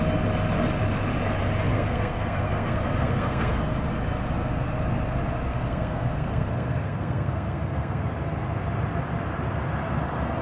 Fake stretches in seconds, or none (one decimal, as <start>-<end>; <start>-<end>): 1.7-3.6; 5.5-8.1